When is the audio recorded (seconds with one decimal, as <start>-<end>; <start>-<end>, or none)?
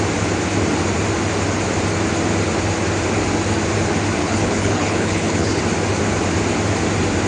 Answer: 0.0-4.2; 5.6-7.3